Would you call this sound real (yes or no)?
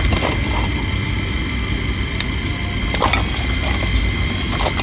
yes